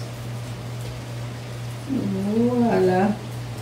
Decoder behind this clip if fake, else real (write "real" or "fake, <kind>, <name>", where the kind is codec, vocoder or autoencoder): real